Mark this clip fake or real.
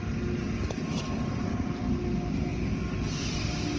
real